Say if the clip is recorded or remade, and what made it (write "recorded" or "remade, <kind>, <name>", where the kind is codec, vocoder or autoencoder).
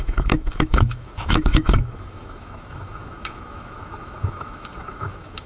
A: remade, autoencoder, DAC-VAE